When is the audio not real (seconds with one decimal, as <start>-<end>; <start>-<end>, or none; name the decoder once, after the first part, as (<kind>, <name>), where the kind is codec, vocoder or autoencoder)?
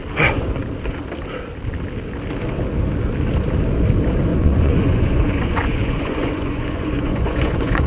4.3-7.9 (vocoder, Vocos)